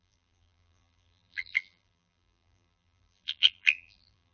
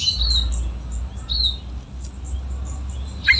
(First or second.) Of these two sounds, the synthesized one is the first